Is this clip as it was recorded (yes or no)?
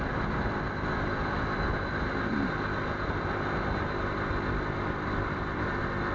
yes